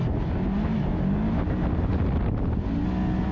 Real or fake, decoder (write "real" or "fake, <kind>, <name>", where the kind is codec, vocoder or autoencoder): real